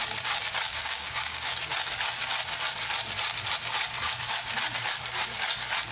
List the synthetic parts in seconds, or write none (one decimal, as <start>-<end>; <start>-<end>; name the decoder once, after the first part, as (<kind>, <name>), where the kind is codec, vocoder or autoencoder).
0.7-1.5 (codec, DAC)